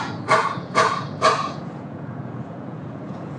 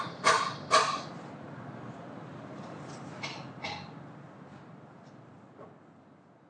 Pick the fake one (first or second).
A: first